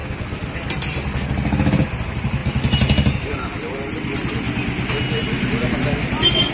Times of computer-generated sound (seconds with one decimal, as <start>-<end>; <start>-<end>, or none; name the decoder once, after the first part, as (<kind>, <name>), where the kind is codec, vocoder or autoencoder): none